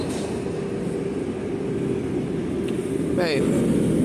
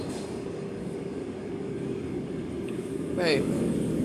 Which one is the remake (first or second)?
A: second